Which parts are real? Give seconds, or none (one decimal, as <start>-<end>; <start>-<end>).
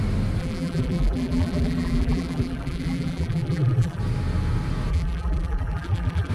0.0-0.4; 4.0-4.9